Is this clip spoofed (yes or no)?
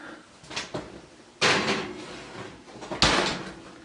no